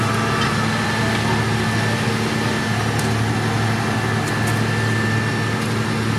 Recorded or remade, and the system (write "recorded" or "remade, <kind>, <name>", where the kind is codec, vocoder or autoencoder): recorded